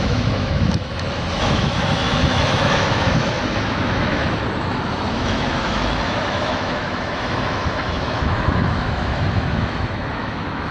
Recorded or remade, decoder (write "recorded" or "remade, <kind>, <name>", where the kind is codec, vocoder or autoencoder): remade, autoencoder, DAC-VAE